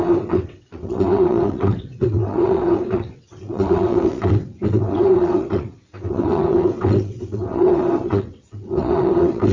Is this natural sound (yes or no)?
no